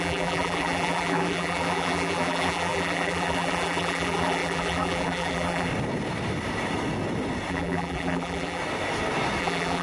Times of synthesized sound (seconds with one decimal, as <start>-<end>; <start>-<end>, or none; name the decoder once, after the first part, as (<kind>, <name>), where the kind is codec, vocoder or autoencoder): 0.0-5.7 (vocoder, BigVGAN v2); 7.5-8.6; 9.4-9.8